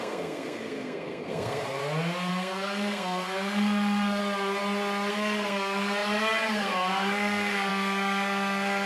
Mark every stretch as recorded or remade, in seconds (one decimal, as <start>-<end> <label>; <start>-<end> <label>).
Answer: 0.0-1.8 remade; 1.8-2.3 recorded; 2.3-4.2 remade; 4.2-5.1 recorded; 5.1-8.9 remade